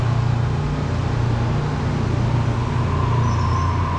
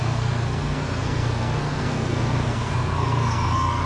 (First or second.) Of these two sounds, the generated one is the second